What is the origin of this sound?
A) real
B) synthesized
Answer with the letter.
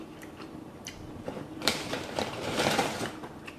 B